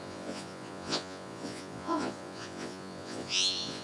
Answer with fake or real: fake